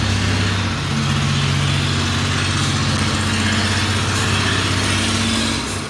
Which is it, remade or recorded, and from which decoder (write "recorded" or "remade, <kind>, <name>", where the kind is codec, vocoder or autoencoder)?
recorded